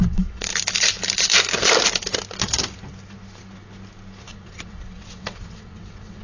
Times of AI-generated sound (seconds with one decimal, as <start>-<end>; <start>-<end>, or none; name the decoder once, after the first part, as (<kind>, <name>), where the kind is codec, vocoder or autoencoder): 0.0-0.5 (vocoder, WaveNeXt); 4.2-6.2